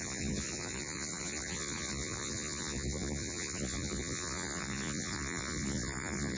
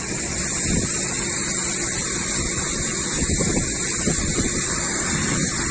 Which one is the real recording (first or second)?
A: second